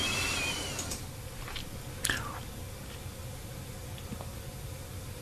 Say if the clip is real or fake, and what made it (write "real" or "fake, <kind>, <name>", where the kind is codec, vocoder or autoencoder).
real